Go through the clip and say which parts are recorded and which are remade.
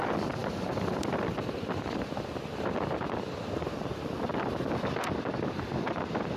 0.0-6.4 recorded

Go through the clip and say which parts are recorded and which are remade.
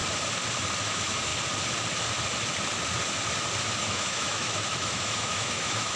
0.0-0.8 recorded; 0.8-1.3 remade; 1.3-3.8 recorded; 3.8-6.0 remade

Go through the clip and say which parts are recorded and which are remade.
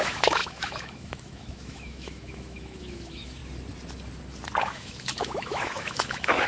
0.0-3.4 remade; 3.4-4.6 recorded; 4.6-6.5 remade